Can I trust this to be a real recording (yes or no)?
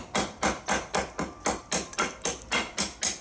yes